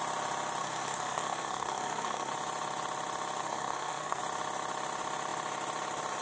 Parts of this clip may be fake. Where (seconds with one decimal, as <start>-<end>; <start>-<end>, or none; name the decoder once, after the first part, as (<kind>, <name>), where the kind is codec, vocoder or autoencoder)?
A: 0.6-2.3 (codec, SNAC); 3.4-4.2